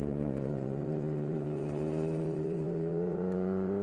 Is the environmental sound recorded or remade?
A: remade